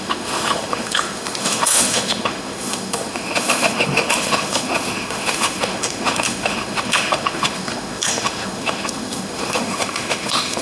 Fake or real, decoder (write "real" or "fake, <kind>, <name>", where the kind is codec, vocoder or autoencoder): fake, autoencoder, DAC-VAE